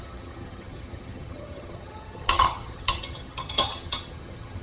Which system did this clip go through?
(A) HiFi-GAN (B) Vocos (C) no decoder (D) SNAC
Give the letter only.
A